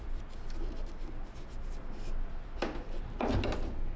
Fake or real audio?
real